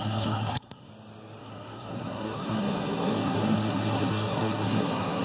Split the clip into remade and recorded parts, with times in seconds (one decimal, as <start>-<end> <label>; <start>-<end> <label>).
0.0-0.9 remade; 0.9-1.4 recorded; 1.4-5.2 remade